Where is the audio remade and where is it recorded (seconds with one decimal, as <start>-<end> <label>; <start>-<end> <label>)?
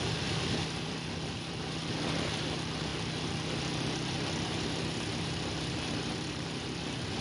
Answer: 0.0-7.2 recorded